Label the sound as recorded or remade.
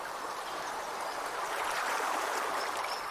remade